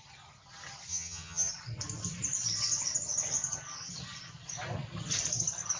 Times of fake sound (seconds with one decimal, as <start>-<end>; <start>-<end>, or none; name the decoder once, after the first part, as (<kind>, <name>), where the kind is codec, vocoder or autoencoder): 0.9-1.5 (vocoder, HiFi-GAN)